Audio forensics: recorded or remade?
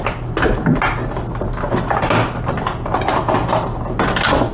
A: recorded